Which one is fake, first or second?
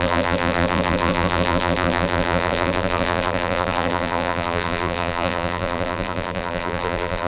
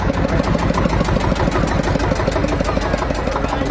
first